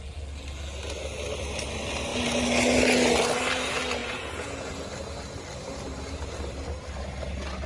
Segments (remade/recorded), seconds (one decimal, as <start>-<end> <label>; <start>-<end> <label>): 0.0-4.0 recorded; 4.0-4.7 remade; 4.7-7.7 recorded